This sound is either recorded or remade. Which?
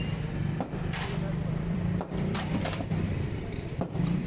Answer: remade